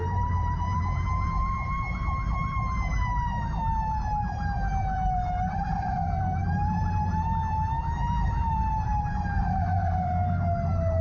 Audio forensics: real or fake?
fake